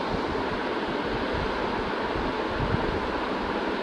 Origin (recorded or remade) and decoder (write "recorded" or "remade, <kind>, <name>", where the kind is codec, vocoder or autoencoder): recorded